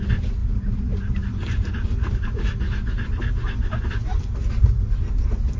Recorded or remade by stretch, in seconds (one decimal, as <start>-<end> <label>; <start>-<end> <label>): 0.0-5.6 recorded